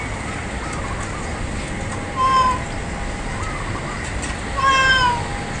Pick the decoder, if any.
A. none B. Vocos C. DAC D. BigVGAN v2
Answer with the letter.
A